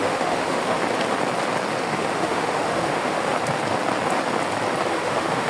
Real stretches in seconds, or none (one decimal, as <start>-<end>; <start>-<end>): 0.8-1.8; 3.3-4.9